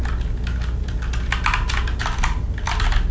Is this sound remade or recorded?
recorded